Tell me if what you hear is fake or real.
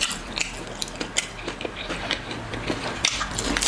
real